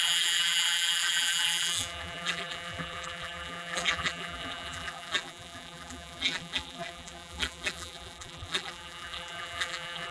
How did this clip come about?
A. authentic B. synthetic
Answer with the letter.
B